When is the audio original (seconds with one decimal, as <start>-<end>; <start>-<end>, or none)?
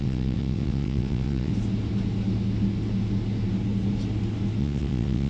1.5-4.6